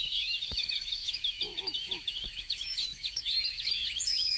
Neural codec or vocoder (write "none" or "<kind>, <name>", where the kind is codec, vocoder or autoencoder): autoencoder, DAC-VAE